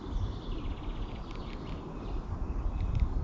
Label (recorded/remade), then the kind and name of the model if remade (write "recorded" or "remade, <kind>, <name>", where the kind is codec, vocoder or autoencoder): recorded